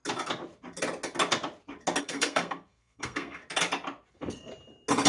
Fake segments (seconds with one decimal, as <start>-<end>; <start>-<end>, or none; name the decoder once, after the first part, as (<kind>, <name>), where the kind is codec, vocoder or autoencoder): 2.0-3.4 (codec, SNAC); 4.1-4.5